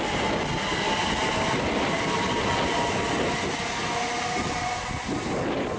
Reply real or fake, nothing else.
real